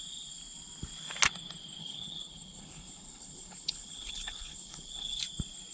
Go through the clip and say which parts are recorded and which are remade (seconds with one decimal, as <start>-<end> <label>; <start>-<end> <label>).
0.0-1.8 recorded; 1.8-5.2 remade; 5.2-5.7 recorded